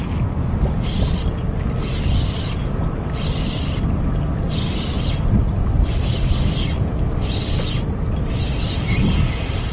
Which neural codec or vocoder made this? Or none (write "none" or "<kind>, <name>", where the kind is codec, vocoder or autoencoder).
none